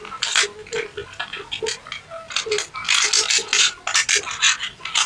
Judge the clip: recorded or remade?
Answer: recorded